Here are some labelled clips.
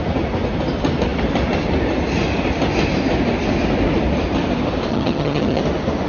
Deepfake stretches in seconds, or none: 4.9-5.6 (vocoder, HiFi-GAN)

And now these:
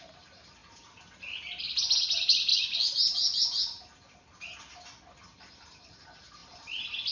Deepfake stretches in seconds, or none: none

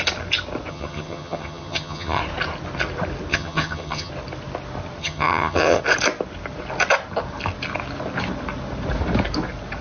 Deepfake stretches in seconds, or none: 0.7-2.2 (vocoder, HiFi-GAN); 3.3-4.1; 5.0-5.8

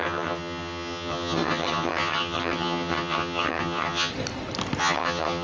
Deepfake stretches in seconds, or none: 0.0-4.1 (vocoder, HiFi-GAN); 4.8-5.4

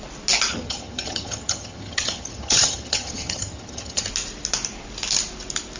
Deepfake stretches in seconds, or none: 0.5-4.0 (vocoder, HiFi-GAN)

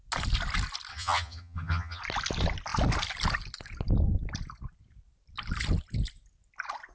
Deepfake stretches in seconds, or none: 0.9-2.0 (vocoder, HiFi-GAN)

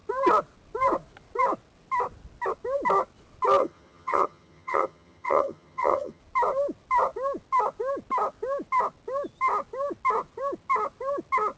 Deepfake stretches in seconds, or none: 3.6-6.2 (vocoder, HiFi-GAN)